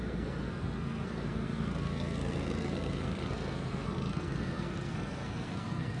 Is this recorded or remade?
remade